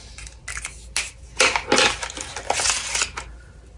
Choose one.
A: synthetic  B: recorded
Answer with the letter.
B